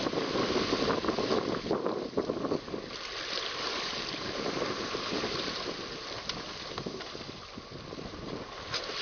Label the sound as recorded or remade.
recorded